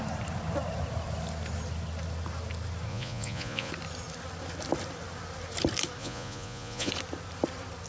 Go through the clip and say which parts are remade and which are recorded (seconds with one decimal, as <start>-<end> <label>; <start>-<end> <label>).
0.0-2.9 recorded; 2.9-3.7 remade; 3.7-6.0 recorded; 6.0-6.9 remade; 6.9-7.9 recorded

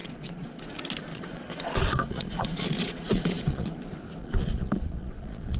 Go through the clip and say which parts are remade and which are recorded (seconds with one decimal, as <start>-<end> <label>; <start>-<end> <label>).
0.0-0.6 remade; 0.6-1.1 recorded; 1.1-3.7 remade; 3.7-4.2 recorded; 4.2-5.6 remade

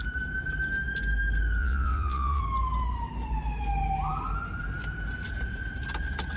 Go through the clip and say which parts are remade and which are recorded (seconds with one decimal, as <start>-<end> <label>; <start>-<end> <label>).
0.0-1.6 recorded; 1.6-2.4 remade; 2.4-6.4 recorded